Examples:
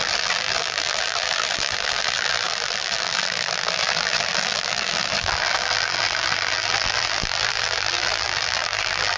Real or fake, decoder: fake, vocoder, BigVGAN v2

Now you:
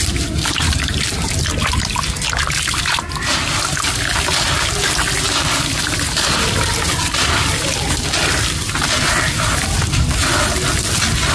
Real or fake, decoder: real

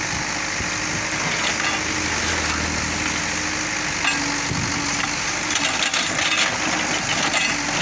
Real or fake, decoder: real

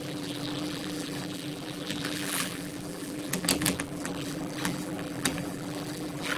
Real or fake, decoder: fake, vocoder, BigVGAN v2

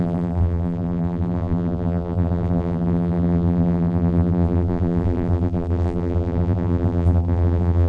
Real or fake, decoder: fake, vocoder, BigVGAN v2